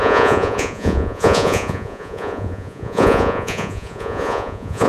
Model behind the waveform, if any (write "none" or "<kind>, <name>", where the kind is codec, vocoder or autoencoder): vocoder, Vocos